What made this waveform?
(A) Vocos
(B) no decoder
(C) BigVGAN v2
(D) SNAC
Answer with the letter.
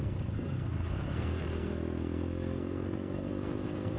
D